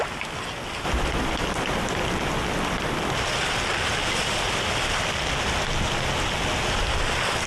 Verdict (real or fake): real